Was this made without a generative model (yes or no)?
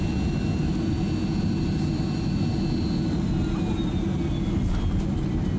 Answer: yes